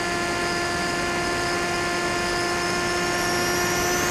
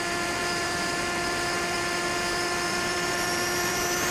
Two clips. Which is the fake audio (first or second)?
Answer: second